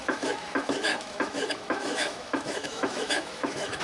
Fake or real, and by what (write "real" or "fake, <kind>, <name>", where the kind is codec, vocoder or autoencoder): fake, autoencoder, DAC-VAE